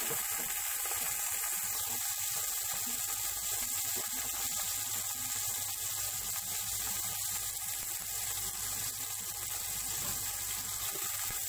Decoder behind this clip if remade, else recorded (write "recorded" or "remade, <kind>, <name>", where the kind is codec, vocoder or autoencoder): recorded